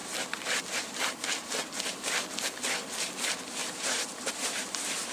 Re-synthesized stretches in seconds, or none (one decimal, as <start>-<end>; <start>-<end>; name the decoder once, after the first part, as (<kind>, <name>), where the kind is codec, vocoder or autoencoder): 3.6-5.1 (vocoder, BigVGAN v2)